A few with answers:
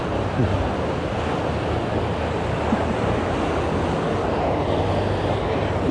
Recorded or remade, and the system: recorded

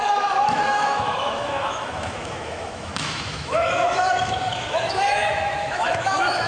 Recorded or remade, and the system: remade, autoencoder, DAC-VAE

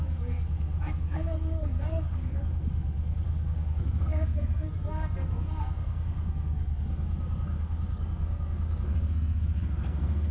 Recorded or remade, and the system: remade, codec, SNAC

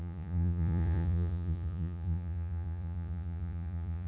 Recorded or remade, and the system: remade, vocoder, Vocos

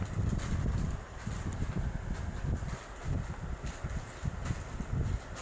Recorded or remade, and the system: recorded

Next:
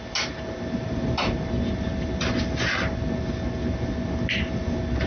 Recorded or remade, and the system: recorded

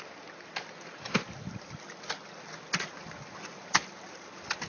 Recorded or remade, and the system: recorded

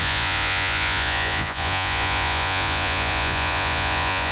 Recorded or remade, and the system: remade, vocoder, Vocos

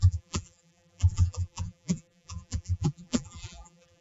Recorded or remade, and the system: remade, vocoder, BigVGAN v2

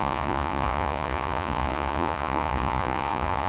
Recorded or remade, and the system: remade, vocoder, Vocos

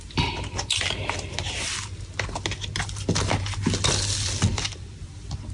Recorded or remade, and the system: recorded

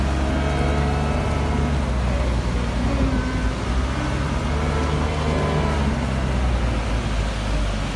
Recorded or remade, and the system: recorded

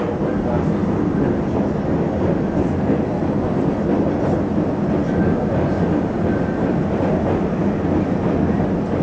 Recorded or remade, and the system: recorded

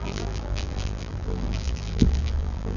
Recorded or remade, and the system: remade, vocoder, BigVGAN v2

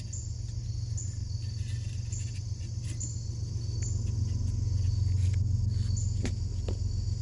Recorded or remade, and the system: recorded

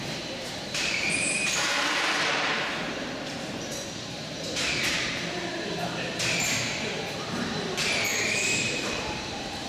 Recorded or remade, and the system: remade, vocoder, BigVGAN v2